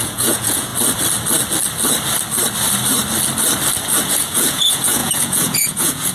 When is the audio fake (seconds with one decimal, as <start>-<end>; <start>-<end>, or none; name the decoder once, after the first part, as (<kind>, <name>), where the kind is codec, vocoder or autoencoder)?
0.0-0.7 (vocoder, Vocos); 4.0-6.1